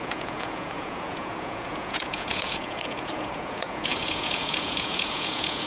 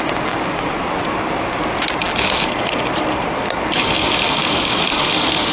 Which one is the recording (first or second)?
second